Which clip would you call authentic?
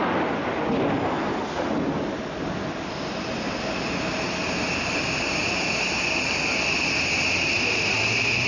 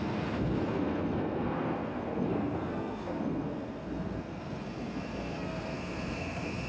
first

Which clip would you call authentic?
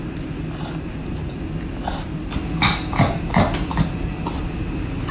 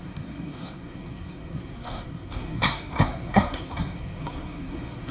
first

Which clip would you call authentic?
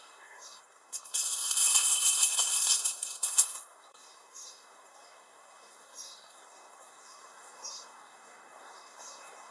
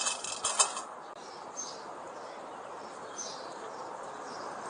second